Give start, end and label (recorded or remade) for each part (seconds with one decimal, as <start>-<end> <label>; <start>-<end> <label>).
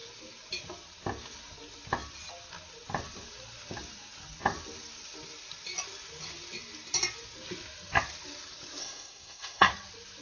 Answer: 0.0-8.8 recorded; 8.8-9.7 remade; 9.7-10.2 recorded